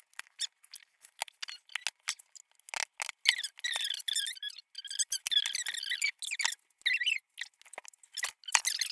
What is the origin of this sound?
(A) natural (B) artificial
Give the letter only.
A